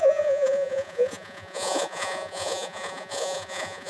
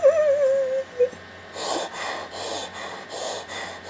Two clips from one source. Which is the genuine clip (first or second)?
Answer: second